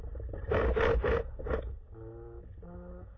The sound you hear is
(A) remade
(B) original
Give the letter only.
B